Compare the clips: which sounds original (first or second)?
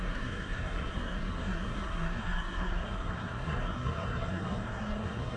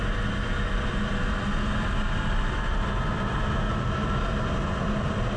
second